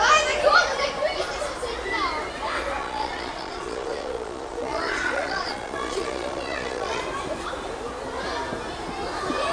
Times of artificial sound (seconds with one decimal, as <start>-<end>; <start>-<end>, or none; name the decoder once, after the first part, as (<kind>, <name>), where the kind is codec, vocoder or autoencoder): 2.8-7.0 (vocoder, Vocos)